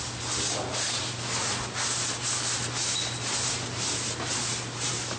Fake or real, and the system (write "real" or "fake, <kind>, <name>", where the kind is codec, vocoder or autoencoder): real